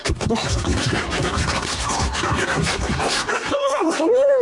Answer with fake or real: fake